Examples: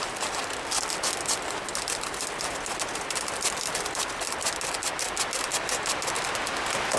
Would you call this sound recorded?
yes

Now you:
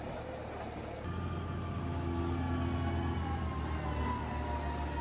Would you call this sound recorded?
yes